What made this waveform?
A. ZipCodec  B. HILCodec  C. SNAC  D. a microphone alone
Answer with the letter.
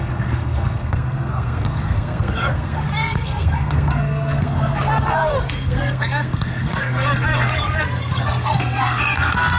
C